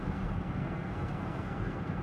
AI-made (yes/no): yes